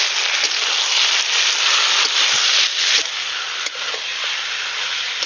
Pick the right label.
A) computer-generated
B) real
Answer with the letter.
B